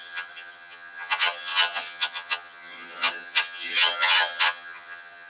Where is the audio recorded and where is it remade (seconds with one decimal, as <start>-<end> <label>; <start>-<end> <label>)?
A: 0.0-5.3 remade